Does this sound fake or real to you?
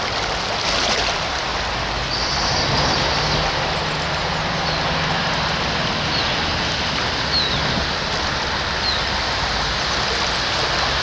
real